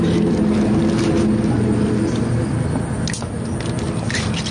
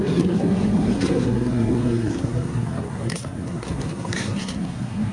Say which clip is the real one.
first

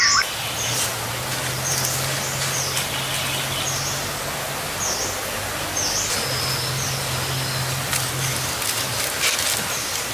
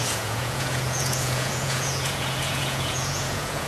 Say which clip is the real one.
first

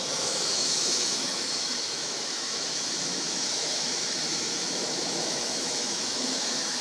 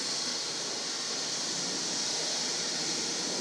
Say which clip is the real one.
second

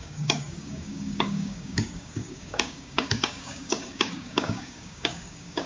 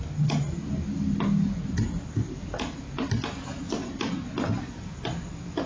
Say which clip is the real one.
second